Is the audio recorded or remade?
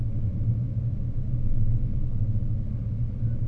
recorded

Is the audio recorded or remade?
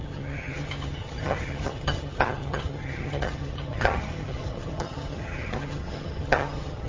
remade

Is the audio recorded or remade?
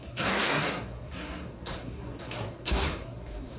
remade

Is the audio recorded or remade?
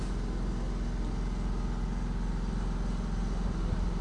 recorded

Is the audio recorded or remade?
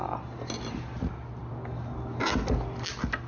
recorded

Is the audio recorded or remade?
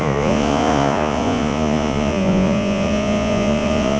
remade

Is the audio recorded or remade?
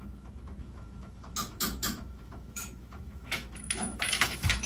remade